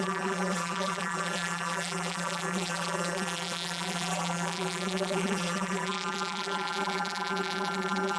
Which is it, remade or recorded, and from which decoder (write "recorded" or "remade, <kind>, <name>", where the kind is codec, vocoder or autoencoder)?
remade, vocoder, BigVGAN v2